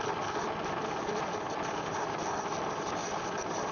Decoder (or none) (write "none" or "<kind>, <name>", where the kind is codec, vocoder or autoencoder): none